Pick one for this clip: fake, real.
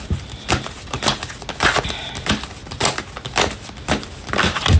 real